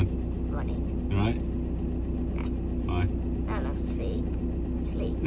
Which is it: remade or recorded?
recorded